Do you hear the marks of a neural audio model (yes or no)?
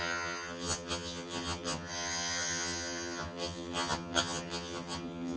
yes